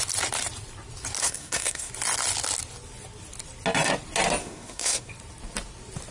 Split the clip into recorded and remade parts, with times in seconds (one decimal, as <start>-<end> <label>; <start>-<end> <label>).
0.0-1.2 recorded; 1.2-1.9 remade; 1.9-4.4 recorded; 4.4-5.1 remade; 5.1-6.1 recorded